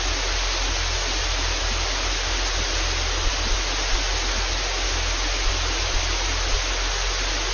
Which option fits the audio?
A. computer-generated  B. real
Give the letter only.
B